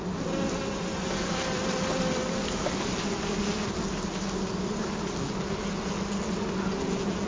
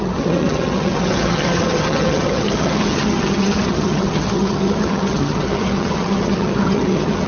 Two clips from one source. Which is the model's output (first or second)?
second